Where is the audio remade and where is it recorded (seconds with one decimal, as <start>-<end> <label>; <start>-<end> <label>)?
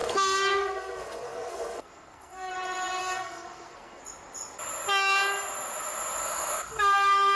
0.0-2.5 remade; 2.5-3.0 recorded; 3.0-4.0 remade; 4.0-6.2 recorded; 6.2-7.4 remade